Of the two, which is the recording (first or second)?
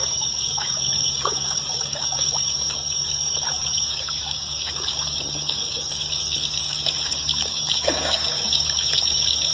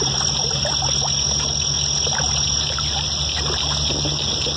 second